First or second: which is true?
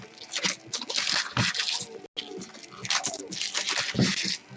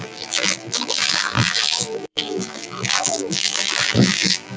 first